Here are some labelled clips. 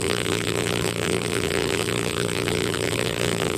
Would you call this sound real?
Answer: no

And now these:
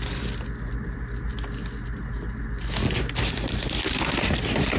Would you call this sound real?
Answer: yes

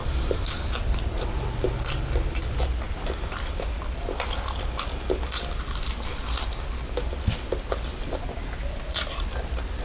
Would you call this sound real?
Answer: yes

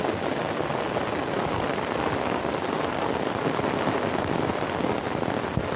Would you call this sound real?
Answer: yes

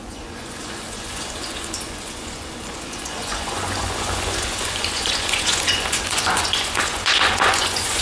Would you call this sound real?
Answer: no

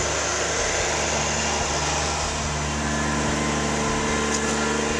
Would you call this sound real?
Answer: yes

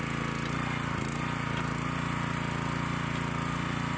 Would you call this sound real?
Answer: yes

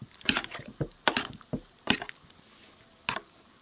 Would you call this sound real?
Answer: yes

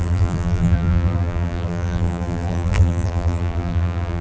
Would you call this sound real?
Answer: no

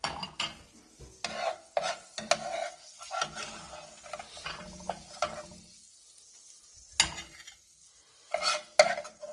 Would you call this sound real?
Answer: yes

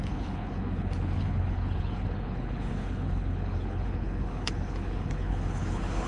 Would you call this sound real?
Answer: no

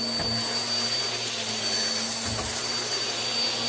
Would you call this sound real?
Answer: yes